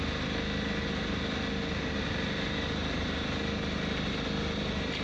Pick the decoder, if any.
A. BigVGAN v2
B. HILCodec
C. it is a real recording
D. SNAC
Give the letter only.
C